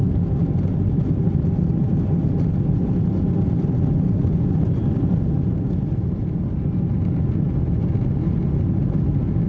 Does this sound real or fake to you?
real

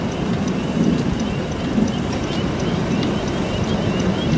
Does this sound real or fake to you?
real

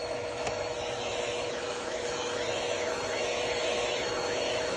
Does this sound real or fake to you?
fake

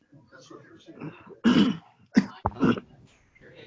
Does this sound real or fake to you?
real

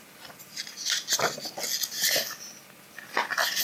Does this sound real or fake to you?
real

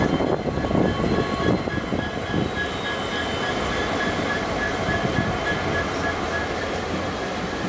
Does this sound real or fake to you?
real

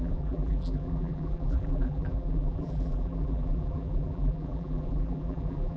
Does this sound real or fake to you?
fake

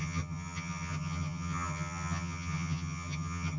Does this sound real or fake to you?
fake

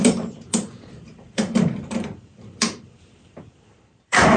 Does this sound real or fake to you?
fake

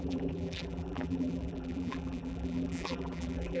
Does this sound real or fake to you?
fake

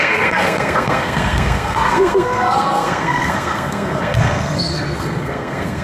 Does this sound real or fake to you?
fake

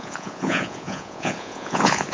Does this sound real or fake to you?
fake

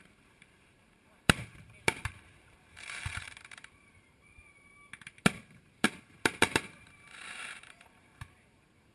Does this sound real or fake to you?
fake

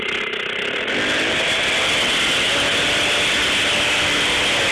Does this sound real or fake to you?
real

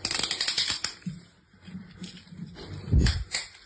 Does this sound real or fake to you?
real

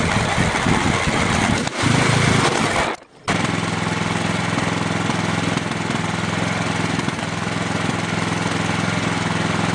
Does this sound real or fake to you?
real